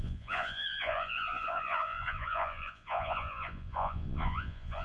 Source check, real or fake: fake